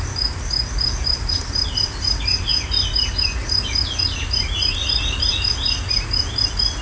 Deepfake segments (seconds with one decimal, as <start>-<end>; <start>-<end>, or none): none